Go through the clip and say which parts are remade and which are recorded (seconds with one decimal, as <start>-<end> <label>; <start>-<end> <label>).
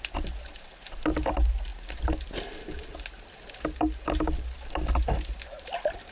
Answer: 0.0-6.1 recorded